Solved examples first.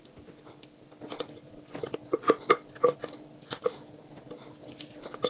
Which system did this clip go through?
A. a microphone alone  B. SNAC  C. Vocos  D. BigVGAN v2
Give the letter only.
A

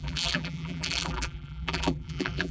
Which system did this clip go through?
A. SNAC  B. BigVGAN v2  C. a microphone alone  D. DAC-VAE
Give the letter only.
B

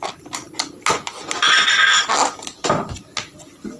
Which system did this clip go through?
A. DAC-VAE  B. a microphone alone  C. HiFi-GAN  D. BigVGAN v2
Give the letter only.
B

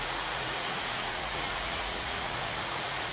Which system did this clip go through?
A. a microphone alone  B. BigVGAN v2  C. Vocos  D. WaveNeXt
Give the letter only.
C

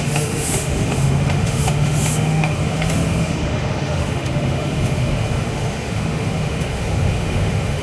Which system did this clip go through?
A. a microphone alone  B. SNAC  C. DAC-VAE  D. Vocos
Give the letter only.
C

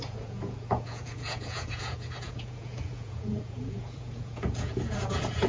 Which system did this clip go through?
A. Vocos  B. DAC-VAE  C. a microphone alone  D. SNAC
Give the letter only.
A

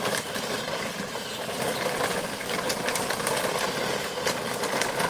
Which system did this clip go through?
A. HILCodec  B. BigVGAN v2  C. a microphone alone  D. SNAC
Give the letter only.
C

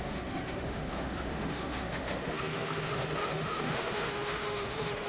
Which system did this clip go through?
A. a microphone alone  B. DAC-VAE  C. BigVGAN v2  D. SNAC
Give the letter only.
B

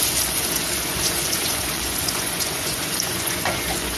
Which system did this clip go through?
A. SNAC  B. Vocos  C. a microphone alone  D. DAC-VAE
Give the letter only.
B